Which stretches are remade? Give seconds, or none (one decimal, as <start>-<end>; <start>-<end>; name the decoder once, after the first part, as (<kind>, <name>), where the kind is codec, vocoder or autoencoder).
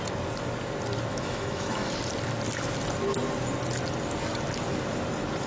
1.1-1.9 (autoencoder, DAC-VAE)